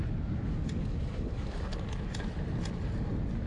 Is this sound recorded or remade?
recorded